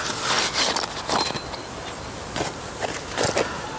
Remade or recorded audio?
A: recorded